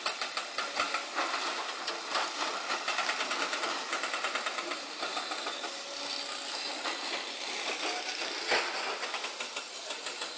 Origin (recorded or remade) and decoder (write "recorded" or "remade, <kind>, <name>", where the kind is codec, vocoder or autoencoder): recorded